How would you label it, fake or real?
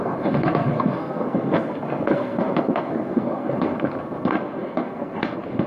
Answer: fake